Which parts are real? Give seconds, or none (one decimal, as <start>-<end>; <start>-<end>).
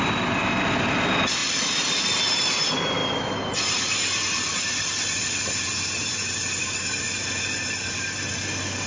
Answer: 0.0-8.9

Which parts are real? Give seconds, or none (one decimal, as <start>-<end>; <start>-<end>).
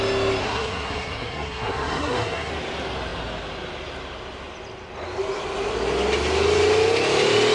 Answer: 0.0-0.4; 2.5-7.5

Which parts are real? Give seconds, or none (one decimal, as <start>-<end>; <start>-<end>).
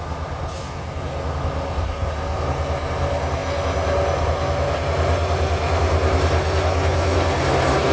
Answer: 0.0-7.9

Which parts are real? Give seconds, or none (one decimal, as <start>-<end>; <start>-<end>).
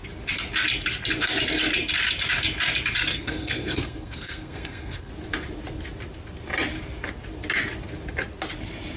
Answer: 0.0-3.1; 5.1-9.0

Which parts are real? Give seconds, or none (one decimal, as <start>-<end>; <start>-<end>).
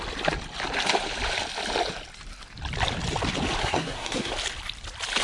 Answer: 0.0-3.6; 4.3-5.2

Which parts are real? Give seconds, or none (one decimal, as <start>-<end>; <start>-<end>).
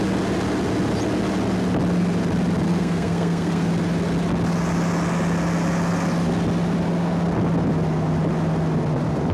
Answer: 0.0-2.7; 3.7-9.3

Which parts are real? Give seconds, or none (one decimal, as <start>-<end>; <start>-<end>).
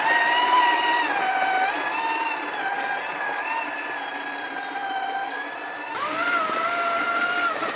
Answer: 0.0-7.8